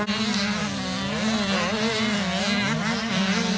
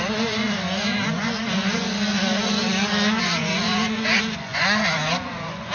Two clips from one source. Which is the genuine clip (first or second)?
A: first